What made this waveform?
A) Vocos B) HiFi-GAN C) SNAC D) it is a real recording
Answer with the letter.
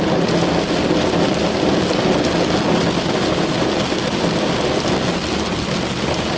D